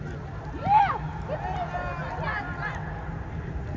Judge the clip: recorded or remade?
recorded